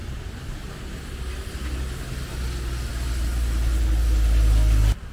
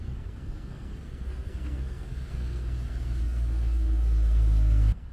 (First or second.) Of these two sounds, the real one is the first